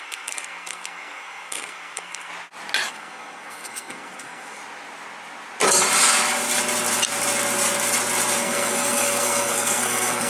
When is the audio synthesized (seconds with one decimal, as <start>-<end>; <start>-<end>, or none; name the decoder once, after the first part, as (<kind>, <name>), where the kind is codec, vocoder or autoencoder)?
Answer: 0.0-2.3 (codec, SNAC); 2.9-4.6; 8.4-10.3